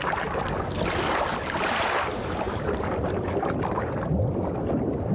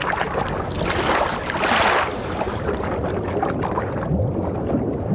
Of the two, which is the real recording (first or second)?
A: second